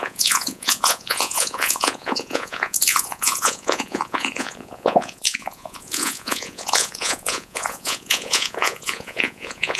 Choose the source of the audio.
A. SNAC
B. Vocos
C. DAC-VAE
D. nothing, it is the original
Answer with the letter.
B